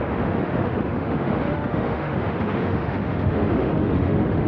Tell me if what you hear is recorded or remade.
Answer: remade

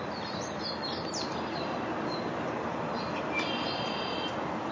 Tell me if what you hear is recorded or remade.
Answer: recorded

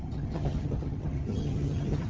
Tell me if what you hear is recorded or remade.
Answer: remade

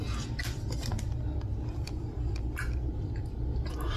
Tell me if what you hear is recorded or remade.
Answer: recorded